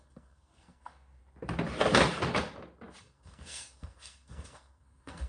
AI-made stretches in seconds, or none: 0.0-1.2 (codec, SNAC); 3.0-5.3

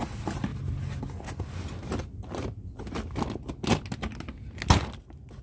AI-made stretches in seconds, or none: none

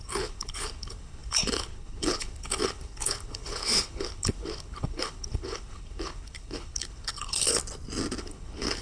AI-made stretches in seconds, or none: 0.0-7.6 (codec, HILCodec); 8.2-8.8

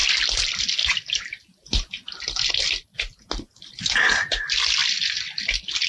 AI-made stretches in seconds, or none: none

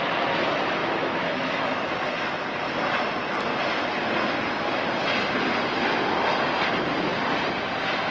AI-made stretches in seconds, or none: 0.8-1.9 (autoencoder, DAC-VAE)

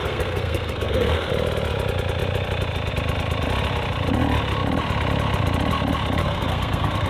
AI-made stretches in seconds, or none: 0.0-1.3 (codec, SNAC); 6.2-7.1

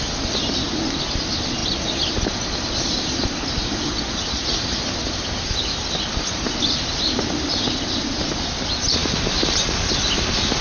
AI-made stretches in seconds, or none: none

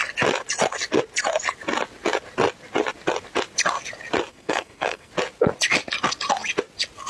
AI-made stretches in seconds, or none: 4.3-5.1 (codec, SNAC)